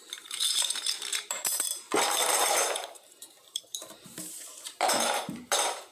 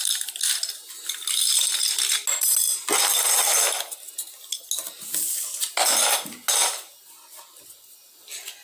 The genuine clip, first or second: second